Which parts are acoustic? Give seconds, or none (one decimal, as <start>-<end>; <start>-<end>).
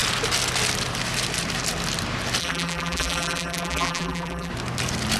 0.0-2.4; 4.5-5.2